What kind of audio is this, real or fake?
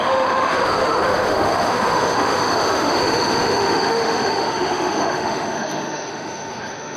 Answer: fake